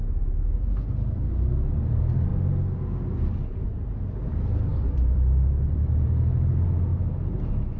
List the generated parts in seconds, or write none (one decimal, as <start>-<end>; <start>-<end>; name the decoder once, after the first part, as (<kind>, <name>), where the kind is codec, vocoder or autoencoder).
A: 4.7-6.0 (vocoder, BigVGAN v2); 6.9-7.8